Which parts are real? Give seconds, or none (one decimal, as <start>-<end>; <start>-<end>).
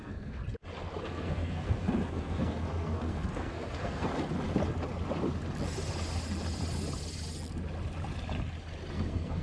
0.4-1.0; 4.1-8.9